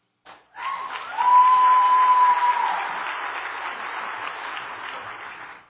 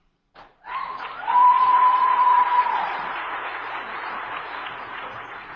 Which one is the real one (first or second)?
first